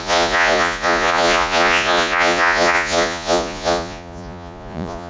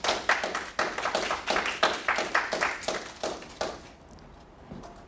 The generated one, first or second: first